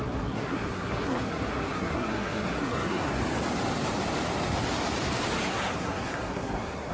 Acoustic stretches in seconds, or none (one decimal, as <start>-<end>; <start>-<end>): 3.2-5.5